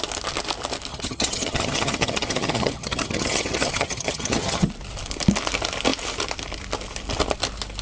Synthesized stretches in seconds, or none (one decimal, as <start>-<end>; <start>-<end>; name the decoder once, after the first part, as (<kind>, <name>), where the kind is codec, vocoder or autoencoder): 0.9-4.7 (vocoder, HiFi-GAN)